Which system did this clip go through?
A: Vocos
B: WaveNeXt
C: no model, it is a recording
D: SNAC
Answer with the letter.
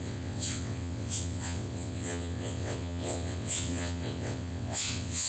B